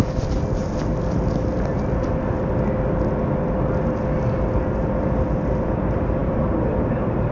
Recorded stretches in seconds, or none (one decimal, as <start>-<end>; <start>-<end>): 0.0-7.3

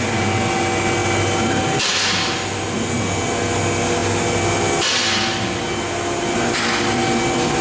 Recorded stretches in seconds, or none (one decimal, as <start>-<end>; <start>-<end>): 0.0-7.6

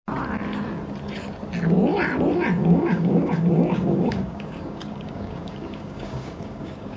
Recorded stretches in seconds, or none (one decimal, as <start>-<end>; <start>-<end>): 0.0-2.6